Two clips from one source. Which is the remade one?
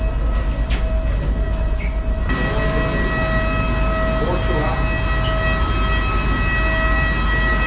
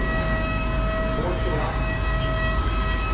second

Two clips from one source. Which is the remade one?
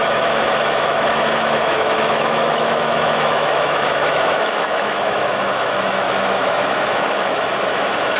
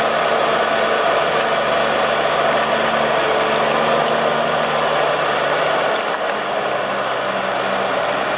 first